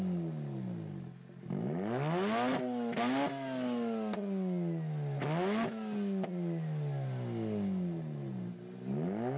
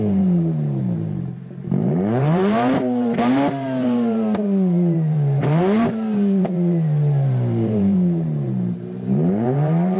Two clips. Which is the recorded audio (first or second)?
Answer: first